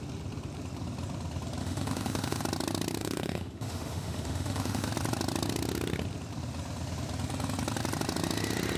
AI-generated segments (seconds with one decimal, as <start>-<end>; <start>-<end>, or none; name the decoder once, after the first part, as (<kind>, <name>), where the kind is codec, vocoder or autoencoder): 1.6-2.4 (autoencoder, DAC-VAE); 3.0-4.9